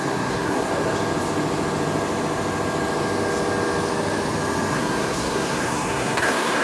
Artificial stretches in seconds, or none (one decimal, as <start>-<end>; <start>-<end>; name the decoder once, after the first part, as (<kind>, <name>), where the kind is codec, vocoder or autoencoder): 0.0-0.7 (codec, SNAC); 4.7-6.6